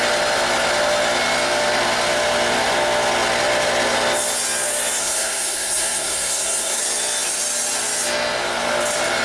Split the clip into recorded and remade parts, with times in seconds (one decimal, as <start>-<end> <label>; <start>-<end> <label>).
0.0-5.0 recorded; 5.0-6.8 remade; 6.8-9.2 recorded